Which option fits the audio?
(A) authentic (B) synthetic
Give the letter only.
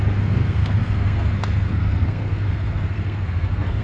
B